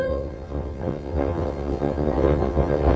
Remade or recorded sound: remade